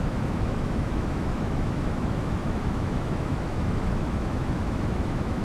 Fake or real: fake